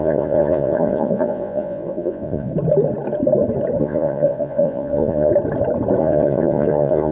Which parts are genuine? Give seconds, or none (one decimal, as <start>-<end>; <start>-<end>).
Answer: 2.5-3.8; 5.3-6.0